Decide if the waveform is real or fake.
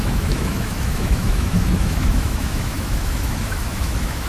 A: fake